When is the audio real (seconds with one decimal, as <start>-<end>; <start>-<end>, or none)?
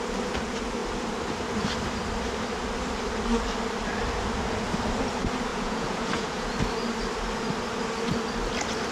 0.0-5.5; 6.5-8.9